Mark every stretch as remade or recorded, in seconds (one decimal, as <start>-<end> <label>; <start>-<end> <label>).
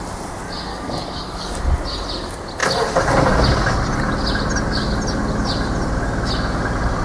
0.0-0.7 recorded; 0.7-1.6 remade; 1.6-7.0 recorded